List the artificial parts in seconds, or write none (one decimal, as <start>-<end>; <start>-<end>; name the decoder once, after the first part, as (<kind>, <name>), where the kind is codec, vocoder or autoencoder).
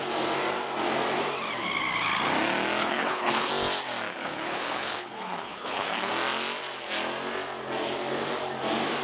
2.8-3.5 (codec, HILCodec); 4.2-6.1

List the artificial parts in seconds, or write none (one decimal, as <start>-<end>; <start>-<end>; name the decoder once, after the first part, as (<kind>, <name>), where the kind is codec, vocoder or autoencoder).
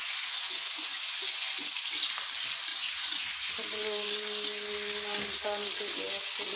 0.0-1.7 (vocoder, Vocos); 2.7-3.5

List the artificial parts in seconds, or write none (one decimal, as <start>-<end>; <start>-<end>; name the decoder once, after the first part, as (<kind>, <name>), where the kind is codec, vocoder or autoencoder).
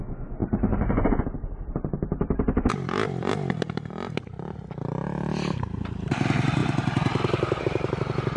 0.4-3.3 (vocoder, BigVGAN v2)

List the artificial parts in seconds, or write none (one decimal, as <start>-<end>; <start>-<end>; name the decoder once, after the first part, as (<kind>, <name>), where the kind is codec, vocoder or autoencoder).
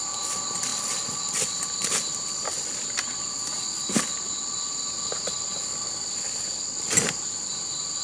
5.6-7.5 (vocoder, BigVGAN v2)